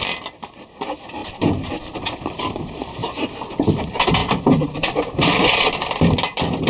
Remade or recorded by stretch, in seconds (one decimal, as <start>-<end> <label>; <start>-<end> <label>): 0.0-1.2 recorded; 1.2-2.6 remade; 2.6-4.2 recorded; 4.2-6.0 remade; 6.0-6.7 recorded